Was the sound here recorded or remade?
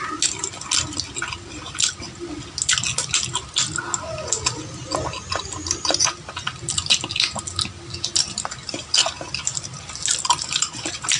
recorded